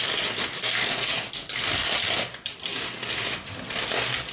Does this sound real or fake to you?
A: real